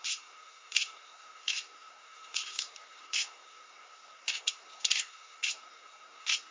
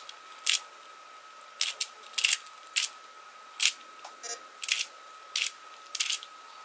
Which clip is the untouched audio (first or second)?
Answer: second